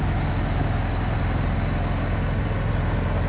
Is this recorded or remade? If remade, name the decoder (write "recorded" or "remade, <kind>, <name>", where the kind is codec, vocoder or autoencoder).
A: recorded